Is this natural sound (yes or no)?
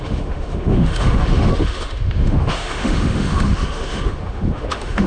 no